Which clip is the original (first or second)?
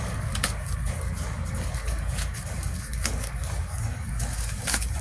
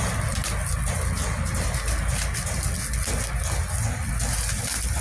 second